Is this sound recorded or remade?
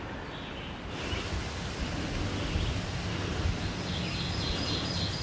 recorded